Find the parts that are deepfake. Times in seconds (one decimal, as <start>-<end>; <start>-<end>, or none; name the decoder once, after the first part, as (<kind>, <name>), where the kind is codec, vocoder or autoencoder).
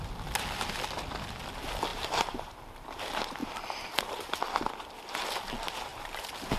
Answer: 1.9-2.8 (vocoder, BigVGAN v2); 5.9-6.6